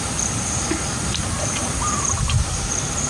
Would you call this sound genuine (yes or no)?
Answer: no